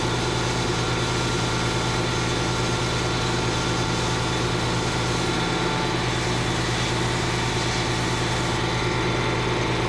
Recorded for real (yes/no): yes